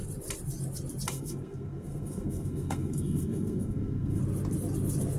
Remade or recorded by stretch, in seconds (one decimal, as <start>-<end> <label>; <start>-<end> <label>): 0.0-1.1 recorded; 1.1-4.2 remade; 4.2-5.2 recorded